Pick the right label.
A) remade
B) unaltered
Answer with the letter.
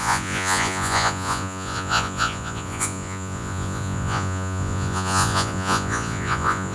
A